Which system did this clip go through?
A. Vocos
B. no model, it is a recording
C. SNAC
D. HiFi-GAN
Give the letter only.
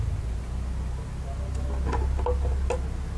B